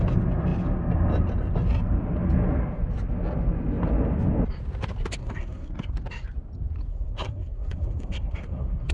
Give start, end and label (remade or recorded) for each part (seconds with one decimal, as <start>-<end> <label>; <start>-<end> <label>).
0.0-5.2 recorded; 5.2-5.9 remade; 5.9-6.9 recorded; 6.9-8.9 remade